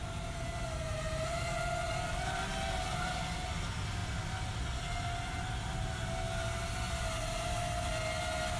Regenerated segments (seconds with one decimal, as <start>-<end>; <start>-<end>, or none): none